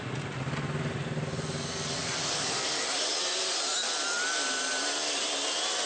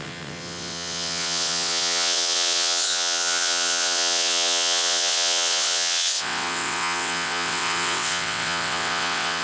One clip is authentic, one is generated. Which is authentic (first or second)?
first